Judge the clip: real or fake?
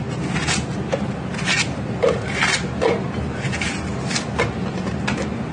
real